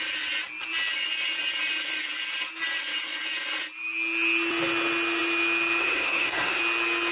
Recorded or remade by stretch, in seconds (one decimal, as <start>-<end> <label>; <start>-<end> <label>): 0.0-5.8 recorded; 5.8-6.6 remade; 6.6-7.1 recorded